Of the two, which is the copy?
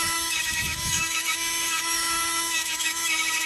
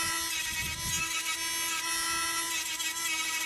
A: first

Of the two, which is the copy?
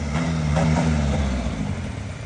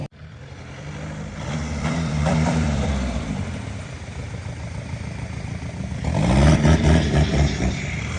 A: second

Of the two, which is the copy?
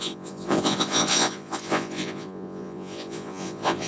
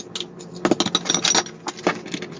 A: first